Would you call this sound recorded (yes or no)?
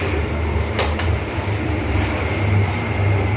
no